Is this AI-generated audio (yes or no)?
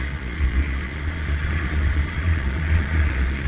yes